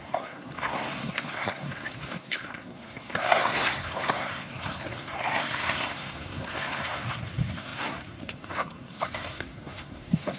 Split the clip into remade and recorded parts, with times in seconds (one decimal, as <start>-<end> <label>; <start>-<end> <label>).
0.0-10.4 remade